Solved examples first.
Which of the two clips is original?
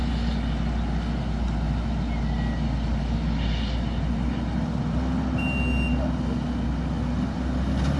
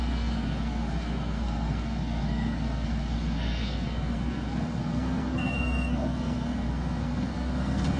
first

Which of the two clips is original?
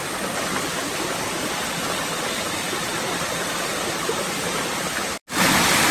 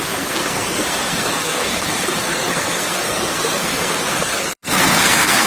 first